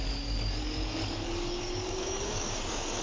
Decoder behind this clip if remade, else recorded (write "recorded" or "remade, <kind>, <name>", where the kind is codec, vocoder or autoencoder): remade, codec, DAC